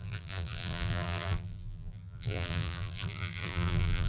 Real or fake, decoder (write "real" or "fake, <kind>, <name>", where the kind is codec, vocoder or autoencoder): fake, vocoder, BigVGAN v2